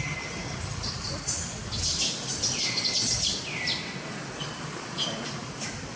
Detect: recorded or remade recorded